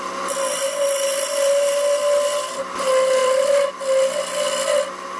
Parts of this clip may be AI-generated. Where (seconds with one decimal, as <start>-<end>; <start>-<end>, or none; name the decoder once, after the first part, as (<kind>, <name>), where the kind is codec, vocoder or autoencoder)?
3.2-3.7 (vocoder, BigVGAN v2)